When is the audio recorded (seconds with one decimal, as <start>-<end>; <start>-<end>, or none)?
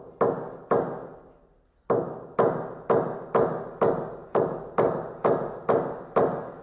0.0-6.6